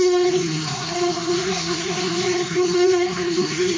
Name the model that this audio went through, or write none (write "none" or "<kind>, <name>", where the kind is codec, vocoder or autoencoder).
codec, SNAC